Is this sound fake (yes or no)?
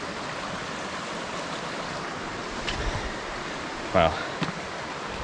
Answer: no